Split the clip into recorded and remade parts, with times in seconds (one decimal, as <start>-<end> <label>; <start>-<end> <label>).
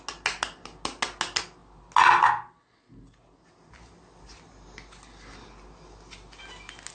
0.0-6.9 recorded